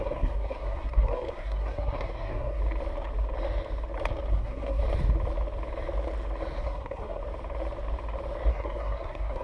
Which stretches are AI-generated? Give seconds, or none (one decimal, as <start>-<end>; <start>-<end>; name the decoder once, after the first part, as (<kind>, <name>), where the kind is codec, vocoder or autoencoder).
0.0-2.6 (codec, SNAC); 4.3-4.8; 6.6-7.2; 8.5-9.4